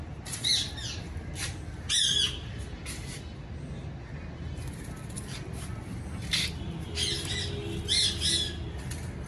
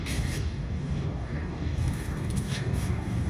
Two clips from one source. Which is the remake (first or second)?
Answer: second